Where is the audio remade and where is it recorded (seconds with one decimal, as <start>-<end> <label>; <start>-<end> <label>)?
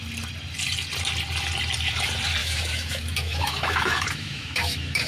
0.0-2.4 recorded; 2.4-5.1 remade